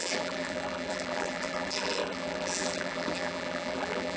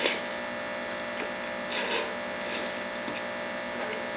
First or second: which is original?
second